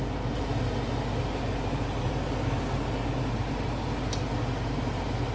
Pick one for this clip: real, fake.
real